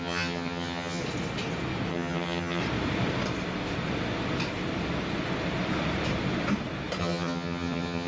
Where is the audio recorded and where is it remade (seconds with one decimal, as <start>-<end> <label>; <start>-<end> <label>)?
0.0-1.0 remade; 1.0-1.9 recorded; 1.9-2.6 remade; 2.6-7.0 recorded; 7.0-8.1 remade

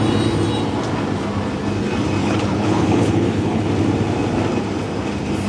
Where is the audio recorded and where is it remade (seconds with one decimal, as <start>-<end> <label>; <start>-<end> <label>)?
0.0-2.2 recorded; 2.2-3.7 remade; 3.7-5.5 recorded

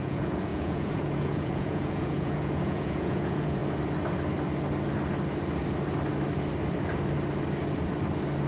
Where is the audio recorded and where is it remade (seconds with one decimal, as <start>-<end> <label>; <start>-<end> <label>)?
0.0-3.6 remade; 3.6-8.5 recorded

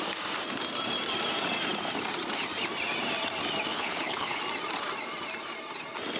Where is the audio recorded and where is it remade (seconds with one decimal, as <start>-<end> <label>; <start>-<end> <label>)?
0.0-3.7 recorded; 3.7-4.4 remade; 4.4-6.2 recorded

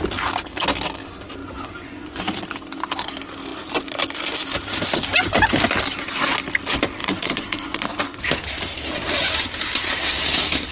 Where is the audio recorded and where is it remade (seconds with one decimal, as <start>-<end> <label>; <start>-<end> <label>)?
0.0-1.4 recorded; 1.4-2.2 remade; 2.2-7.0 recorded; 7.0-8.0 remade; 8.0-10.7 recorded